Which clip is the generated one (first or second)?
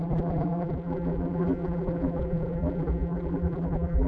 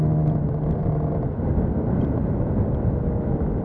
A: first